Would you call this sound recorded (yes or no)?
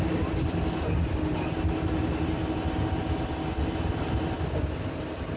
yes